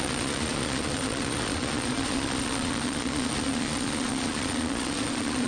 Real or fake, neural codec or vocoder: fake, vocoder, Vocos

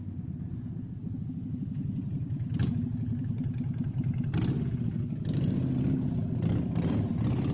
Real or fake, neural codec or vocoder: real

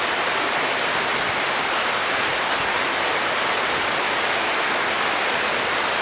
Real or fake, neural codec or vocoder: real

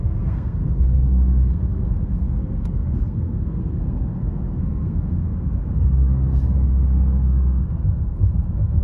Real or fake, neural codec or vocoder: fake, codec, SNAC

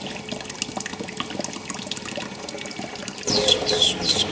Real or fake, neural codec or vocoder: real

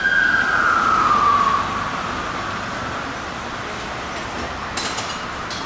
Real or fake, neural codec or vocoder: real